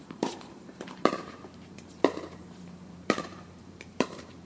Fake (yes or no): yes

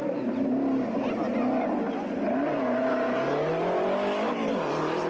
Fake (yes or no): no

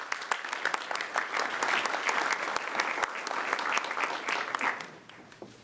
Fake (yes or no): no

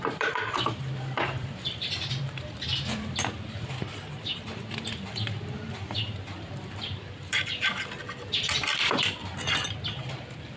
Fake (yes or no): yes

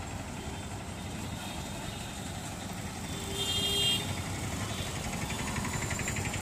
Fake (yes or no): no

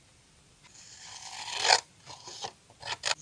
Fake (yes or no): yes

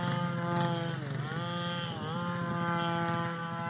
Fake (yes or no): no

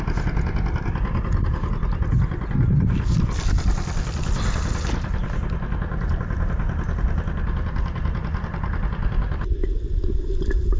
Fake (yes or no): no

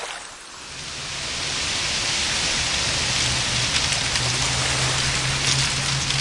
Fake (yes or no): no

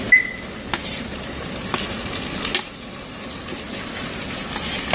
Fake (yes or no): no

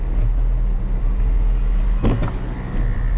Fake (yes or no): no